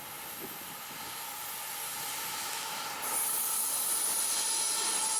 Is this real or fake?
real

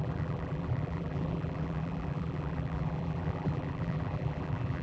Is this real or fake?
fake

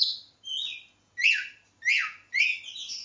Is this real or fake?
real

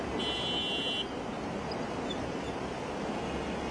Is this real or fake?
real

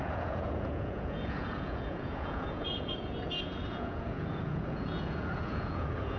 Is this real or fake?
fake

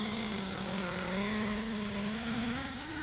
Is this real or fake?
fake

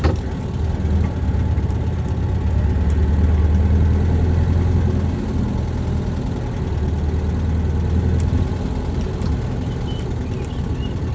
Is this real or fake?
real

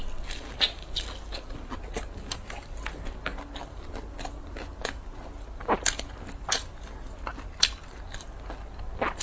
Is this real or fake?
real